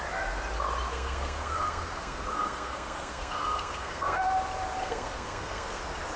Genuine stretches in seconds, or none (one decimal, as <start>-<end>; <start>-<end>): 0.0-0.9; 4.2-4.8; 5.8-6.2